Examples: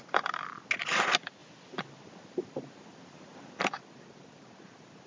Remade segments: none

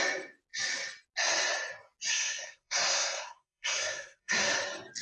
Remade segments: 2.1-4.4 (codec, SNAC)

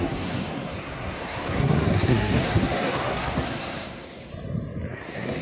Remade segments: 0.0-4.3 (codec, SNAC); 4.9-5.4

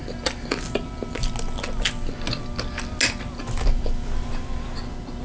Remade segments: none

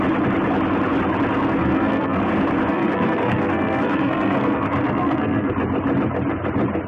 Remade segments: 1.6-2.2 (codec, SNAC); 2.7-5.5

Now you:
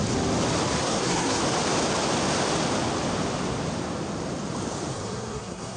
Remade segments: 0.8-1.4 (codec, SNAC); 4.9-5.8

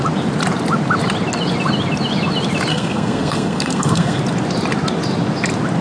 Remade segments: 2.7-4.2 (codec, SNAC)